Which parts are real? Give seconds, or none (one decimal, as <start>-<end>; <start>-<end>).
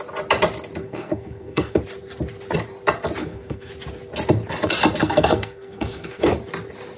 0.0-0.8; 1.8-3.2; 3.7-5.0; 6.3-7.0